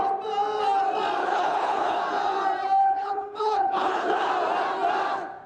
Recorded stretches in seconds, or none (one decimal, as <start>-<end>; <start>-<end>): 0.0-1.2; 2.0-2.8; 4.3-5.5